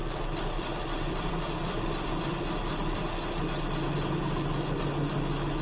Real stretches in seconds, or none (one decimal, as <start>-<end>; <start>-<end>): 2.6-5.6